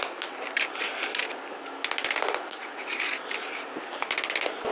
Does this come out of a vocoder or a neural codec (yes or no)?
no